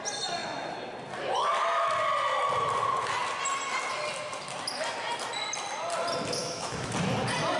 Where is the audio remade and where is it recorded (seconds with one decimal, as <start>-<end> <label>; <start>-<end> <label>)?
0.0-6.4 recorded; 6.4-6.9 remade; 6.9-7.6 recorded